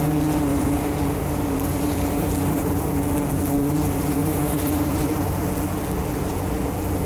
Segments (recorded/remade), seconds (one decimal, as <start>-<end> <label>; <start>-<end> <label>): 0.0-0.5 recorded; 0.5-3.0 remade; 3.0-4.2 recorded; 4.2-5.5 remade; 5.5-7.1 recorded